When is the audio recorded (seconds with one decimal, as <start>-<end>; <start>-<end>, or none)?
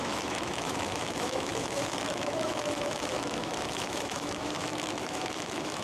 none